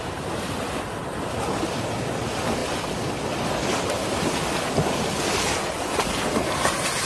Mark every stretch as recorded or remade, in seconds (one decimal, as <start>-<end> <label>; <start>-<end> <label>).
0.0-7.1 recorded